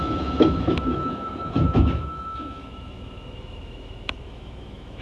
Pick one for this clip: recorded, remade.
remade